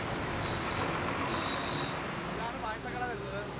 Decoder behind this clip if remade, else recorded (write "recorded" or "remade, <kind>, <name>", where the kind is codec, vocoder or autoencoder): recorded